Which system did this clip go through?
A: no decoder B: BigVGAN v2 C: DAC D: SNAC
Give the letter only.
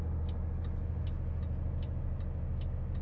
A